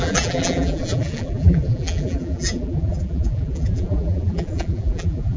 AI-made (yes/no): yes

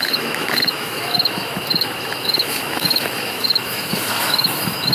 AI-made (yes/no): yes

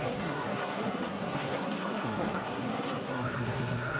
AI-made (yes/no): yes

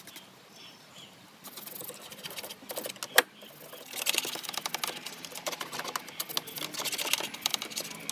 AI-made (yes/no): no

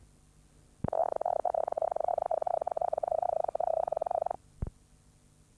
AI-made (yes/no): no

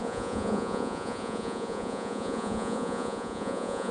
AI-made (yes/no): yes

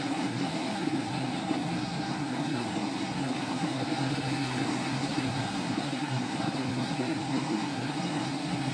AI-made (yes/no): yes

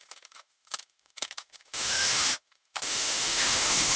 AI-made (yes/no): yes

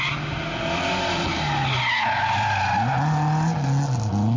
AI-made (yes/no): no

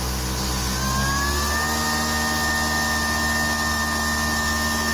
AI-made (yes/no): no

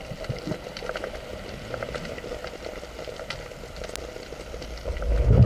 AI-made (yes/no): no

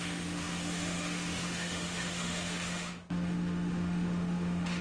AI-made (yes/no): yes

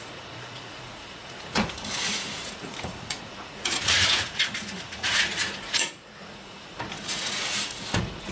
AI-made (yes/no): yes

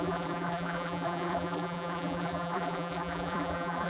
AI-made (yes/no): yes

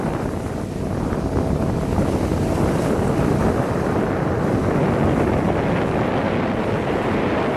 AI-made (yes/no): no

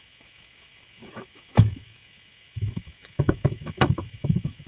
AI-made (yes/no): yes